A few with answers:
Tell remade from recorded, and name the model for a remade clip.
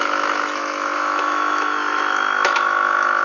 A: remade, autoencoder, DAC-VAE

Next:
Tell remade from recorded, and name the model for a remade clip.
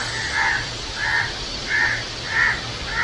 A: recorded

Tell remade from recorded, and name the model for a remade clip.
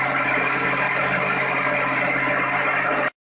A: recorded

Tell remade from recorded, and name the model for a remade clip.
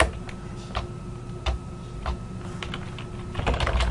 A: recorded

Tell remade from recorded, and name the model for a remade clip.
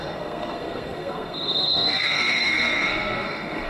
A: remade, codec, SNAC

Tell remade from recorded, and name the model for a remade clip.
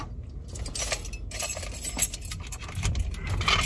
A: recorded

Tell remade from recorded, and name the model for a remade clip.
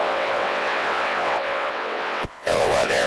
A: remade, vocoder, WaveNeXt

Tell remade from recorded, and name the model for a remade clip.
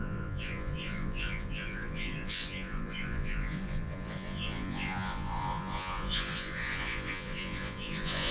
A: remade, vocoder, Vocos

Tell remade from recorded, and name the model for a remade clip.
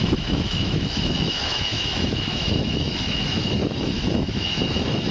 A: remade, autoencoder, DAC-VAE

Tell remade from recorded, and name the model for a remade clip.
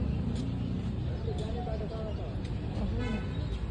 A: recorded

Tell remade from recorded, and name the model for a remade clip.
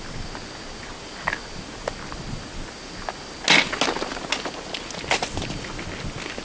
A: recorded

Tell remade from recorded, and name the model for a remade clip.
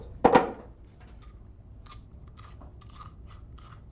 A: recorded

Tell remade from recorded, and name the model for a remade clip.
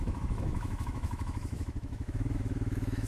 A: remade, autoencoder, DAC-VAE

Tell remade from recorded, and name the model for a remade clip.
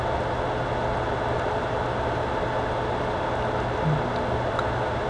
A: recorded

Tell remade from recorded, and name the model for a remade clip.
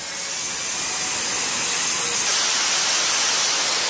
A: recorded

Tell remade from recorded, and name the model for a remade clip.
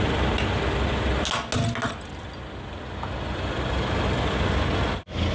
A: recorded